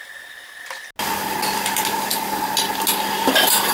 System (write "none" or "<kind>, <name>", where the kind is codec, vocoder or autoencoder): none